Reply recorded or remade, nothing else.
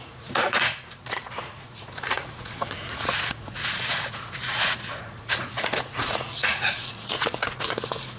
remade